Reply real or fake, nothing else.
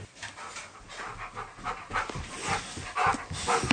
real